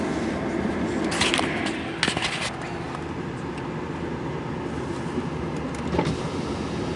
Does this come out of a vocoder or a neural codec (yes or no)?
no